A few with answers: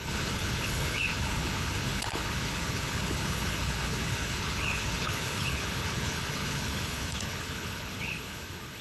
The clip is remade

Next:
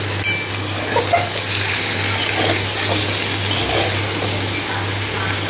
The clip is recorded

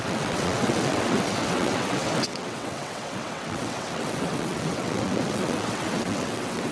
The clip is remade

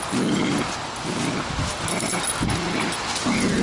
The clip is recorded